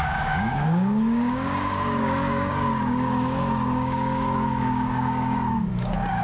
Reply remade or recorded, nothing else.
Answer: remade